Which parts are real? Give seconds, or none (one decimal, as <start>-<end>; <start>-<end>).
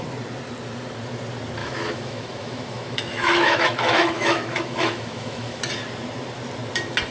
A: 0.0-1.6; 5.6-7.1